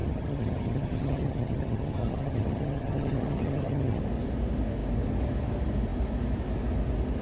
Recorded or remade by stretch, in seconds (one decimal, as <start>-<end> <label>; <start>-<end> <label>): 0.0-4.0 remade; 4.0-7.2 recorded